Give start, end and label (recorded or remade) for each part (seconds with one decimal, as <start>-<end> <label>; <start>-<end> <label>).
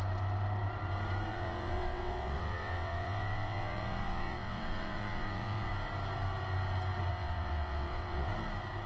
0.0-1.3 recorded; 1.3-5.7 remade; 5.7-7.1 recorded; 7.1-8.3 remade; 8.3-8.9 recorded